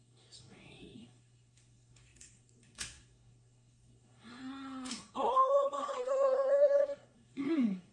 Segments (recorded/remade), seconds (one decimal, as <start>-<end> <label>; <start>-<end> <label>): 0.0-7.9 remade